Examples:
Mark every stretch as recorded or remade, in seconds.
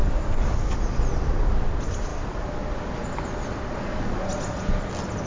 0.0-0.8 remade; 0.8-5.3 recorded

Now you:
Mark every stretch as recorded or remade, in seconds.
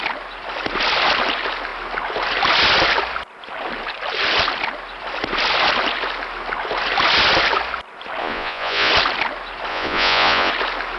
0.0-8.2 recorded; 8.2-8.9 remade; 8.9-9.7 recorded; 9.7-10.5 remade; 10.5-11.0 recorded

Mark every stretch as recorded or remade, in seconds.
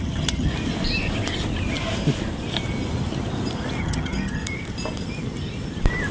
0.0-0.5 remade; 0.5-3.8 recorded; 3.8-4.4 remade; 4.4-6.1 recorded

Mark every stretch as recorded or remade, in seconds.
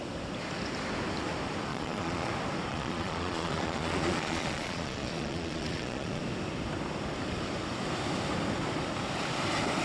0.0-1.7 recorded; 1.7-2.3 remade; 2.3-2.7 recorded; 2.7-6.2 remade; 6.2-9.8 recorded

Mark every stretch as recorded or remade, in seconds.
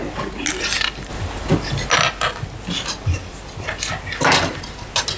0.0-5.2 recorded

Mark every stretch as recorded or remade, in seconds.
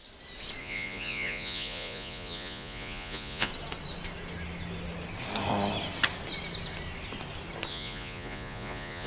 0.0-0.6 recorded; 0.6-3.5 remade; 3.5-7.7 recorded; 7.7-9.1 remade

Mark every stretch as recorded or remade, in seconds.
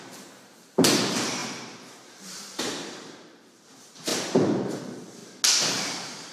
0.0-5.2 remade; 5.2-5.7 recorded; 5.7-6.3 remade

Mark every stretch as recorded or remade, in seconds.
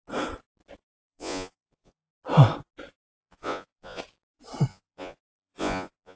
0.0-1.0 recorded; 1.0-2.1 remade; 2.1-3.2 recorded; 3.2-4.0 remade; 4.0-4.7 recorded; 4.7-6.2 remade